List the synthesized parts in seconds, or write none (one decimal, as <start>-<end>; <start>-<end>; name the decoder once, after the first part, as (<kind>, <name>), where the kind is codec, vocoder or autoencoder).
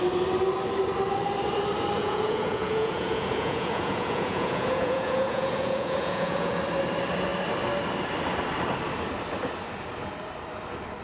2.0-6.6 (vocoder, Vocos)